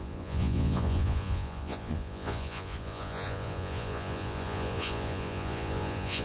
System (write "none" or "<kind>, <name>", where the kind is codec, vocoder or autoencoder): vocoder, Vocos